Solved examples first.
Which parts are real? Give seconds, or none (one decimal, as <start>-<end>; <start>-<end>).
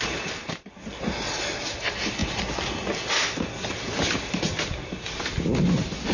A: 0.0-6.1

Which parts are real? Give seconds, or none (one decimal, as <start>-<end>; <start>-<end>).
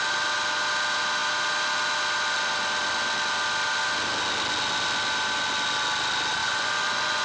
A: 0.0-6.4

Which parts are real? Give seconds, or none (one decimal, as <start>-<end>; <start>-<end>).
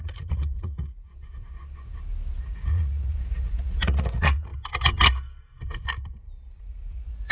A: 1.1-2.4; 4.5-6.6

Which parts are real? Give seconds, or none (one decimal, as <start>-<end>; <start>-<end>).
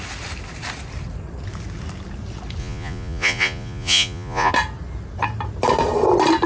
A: 0.0-2.6; 4.5-6.5